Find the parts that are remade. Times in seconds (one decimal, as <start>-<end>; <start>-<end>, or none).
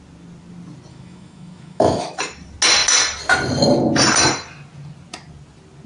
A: 0.9-2.2